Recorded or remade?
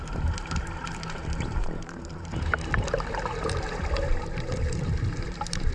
remade